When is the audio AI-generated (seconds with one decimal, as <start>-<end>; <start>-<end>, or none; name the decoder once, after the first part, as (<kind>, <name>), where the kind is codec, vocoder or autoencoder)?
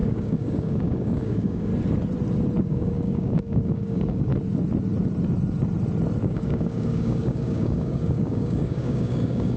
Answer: 0.0-1.7 (codec, DAC); 2.6-4.3; 6.2-9.6